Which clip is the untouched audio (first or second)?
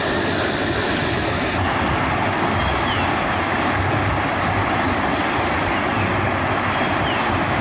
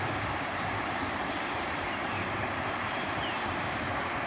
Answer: first